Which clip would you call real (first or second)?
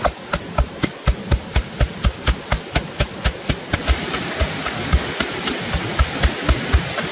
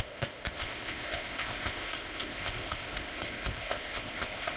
first